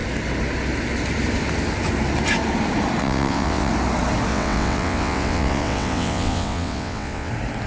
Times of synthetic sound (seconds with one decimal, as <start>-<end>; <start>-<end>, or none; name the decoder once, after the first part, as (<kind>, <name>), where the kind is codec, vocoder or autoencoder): 3.0-3.7 (vocoder, WaveNeXt); 4.3-7.3